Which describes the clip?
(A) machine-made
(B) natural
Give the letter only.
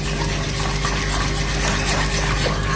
B